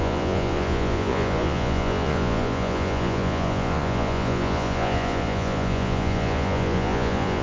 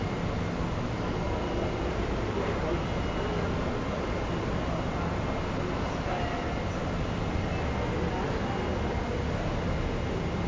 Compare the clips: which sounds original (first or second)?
second